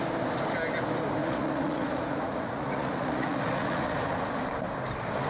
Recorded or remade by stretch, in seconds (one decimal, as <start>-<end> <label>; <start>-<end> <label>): 0.0-1.2 recorded; 1.2-4.2 remade; 4.2-5.3 recorded